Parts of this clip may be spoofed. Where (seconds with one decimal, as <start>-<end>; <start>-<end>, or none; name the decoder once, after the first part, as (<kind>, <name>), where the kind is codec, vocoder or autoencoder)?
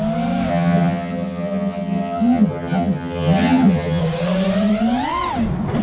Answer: 0.5-4.0 (vocoder, HiFi-GAN)